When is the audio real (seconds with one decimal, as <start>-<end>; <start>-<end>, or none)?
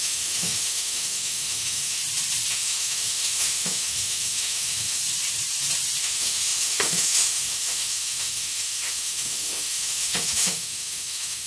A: 2.0-2.5; 5.0-6.0